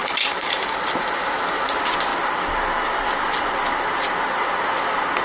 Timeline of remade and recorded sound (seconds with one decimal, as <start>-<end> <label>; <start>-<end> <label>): 0.0-1.7 remade; 1.7-2.1 recorded; 2.1-2.7 remade; 2.7-5.2 recorded